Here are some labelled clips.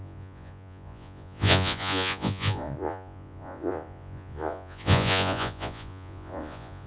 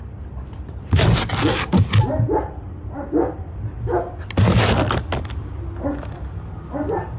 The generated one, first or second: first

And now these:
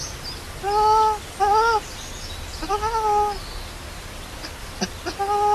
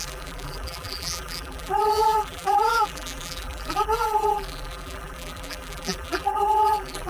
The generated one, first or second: second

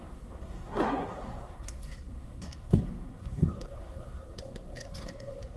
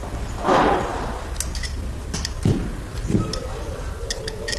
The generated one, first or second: first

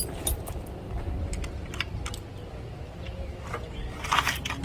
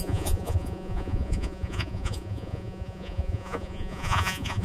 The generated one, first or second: second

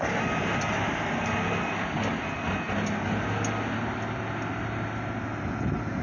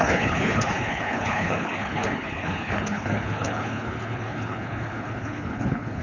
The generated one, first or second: second